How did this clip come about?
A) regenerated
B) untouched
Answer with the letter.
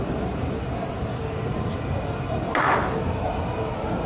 B